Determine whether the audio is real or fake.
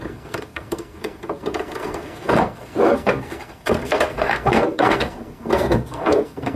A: fake